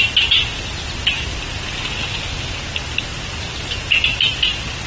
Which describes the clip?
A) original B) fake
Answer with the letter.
A